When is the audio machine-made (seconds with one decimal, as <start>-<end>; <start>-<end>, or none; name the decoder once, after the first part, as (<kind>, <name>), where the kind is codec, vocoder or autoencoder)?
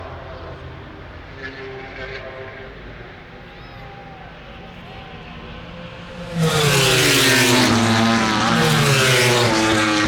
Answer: none